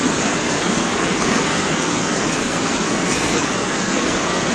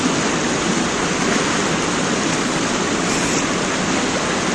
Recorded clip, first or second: second